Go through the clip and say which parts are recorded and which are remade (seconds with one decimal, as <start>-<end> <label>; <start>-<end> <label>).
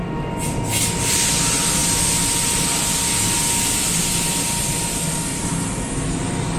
0.0-6.6 recorded